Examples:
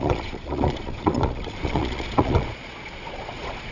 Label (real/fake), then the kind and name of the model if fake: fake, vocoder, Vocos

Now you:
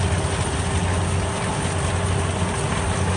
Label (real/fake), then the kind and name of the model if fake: real